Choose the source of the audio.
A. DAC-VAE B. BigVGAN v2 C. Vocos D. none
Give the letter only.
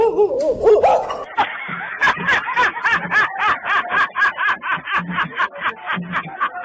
D